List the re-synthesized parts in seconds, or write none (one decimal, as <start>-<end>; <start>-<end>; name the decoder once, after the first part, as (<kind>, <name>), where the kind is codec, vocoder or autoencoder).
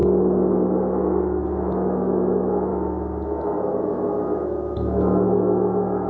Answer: 1.4-2.7 (autoencoder, DAC-VAE); 3.8-6.1